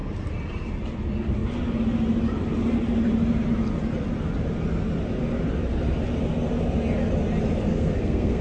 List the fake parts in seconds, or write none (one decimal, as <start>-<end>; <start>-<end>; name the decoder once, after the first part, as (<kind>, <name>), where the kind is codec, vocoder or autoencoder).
7.7-8.4 (codec, SNAC)